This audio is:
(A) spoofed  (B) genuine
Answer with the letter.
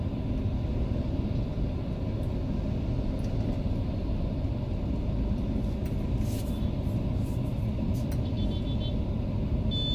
B